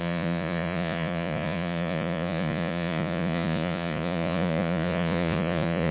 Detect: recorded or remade remade